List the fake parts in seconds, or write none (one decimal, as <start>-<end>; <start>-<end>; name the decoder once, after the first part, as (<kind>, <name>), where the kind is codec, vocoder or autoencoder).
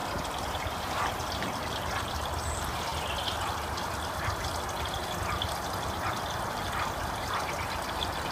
0.0-2.9 (vocoder, BigVGAN v2); 6.1-8.3